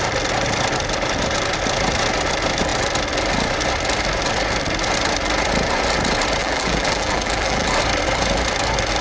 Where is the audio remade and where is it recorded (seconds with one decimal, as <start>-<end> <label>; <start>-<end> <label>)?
0.0-6.4 recorded; 6.4-7.8 remade; 7.8-9.0 recorded